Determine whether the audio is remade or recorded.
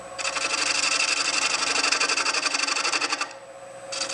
recorded